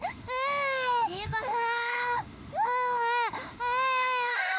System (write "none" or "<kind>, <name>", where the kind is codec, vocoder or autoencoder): autoencoder, DAC-VAE